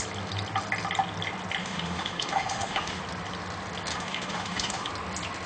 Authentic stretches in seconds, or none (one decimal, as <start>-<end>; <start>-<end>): 0.0-1.6; 3.0-3.9; 4.9-5.5